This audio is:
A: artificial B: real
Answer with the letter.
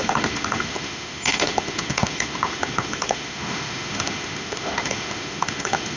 A